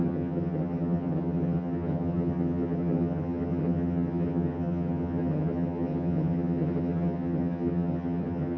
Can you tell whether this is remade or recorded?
remade